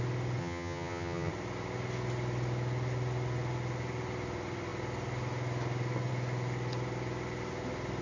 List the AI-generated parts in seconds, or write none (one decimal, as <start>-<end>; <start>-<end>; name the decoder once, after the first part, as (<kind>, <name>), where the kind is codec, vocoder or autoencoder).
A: 0.4-1.3 (vocoder, HiFi-GAN)